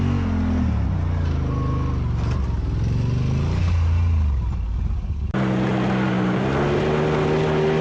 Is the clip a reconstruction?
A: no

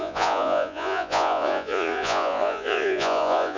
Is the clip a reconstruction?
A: yes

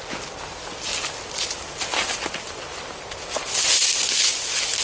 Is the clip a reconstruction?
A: no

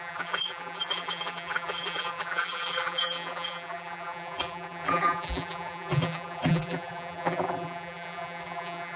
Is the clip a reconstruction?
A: yes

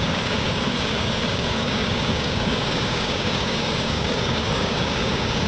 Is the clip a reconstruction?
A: yes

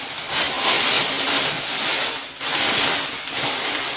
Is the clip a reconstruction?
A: no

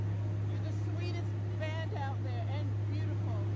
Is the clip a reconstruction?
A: no